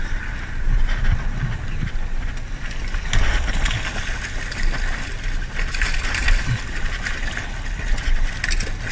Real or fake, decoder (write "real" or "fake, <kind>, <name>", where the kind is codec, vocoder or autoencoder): real